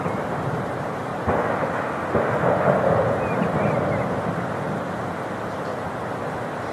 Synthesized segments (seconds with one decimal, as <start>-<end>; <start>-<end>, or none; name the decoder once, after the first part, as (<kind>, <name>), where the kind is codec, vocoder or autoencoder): 0.0-6.7 (vocoder, BigVGAN v2)